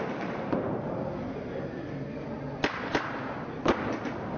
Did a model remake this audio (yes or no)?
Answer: no